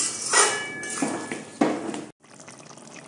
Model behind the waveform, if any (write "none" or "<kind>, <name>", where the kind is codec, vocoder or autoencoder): none